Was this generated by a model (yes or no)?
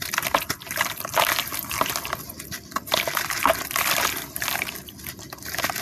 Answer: no